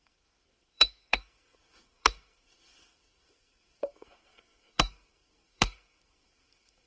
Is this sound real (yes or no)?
no